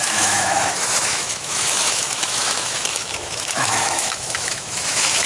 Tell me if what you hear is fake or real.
fake